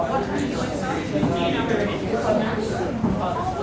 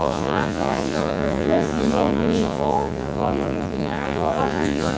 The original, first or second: first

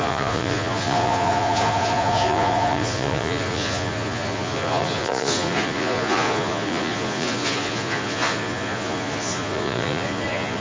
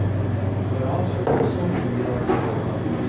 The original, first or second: second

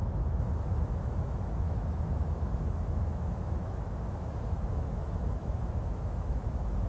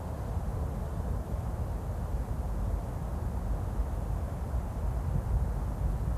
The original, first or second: second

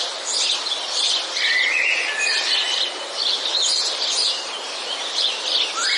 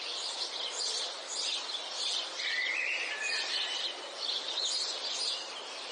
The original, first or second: first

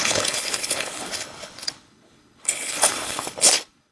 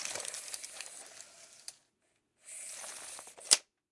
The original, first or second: second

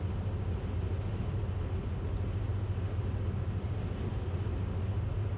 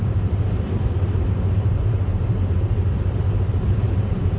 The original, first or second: first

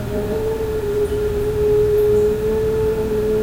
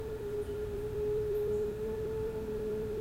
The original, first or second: first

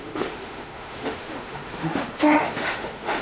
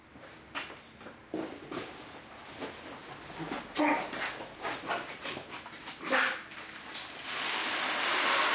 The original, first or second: second